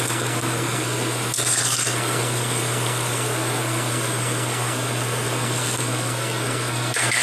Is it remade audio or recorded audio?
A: remade